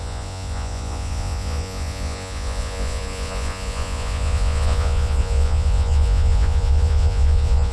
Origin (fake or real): fake